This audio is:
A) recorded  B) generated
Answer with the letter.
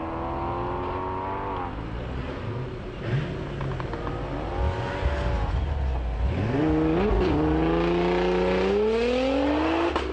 A